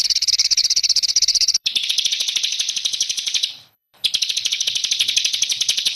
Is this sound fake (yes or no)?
yes